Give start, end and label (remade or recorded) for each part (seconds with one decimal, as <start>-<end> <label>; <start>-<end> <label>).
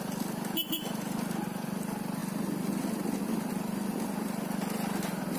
0.0-5.4 recorded